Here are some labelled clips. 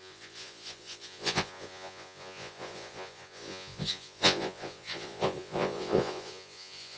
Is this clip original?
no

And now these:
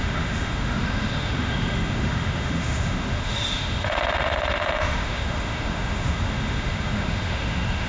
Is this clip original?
no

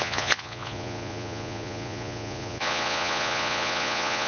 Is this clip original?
no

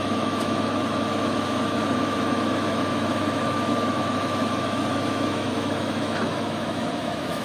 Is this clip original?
no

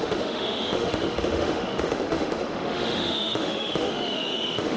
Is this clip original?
no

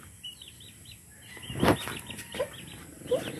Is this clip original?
yes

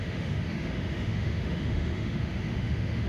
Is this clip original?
no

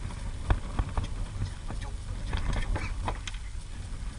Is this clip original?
yes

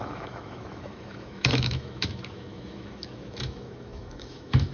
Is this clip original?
no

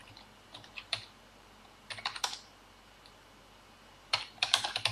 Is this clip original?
no